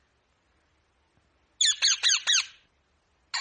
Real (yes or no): yes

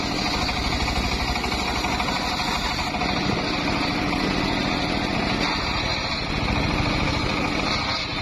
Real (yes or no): yes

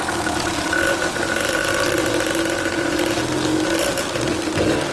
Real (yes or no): yes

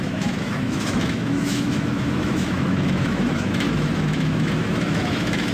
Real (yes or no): no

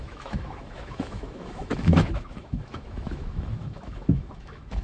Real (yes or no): no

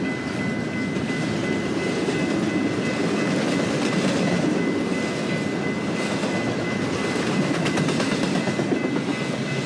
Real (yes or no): yes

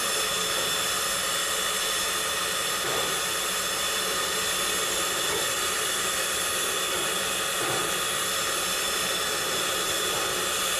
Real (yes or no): yes